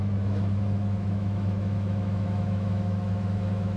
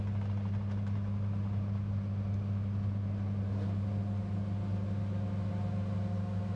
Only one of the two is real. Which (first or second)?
second